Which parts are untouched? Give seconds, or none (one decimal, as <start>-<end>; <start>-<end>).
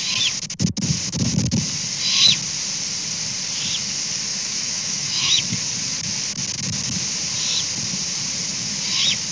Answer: 0.0-4.3; 5.4-9.3